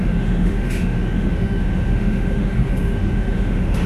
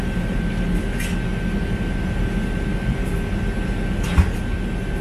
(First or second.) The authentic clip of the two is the second